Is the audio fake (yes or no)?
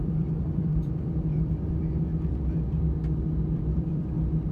yes